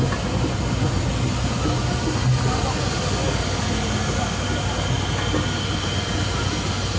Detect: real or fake real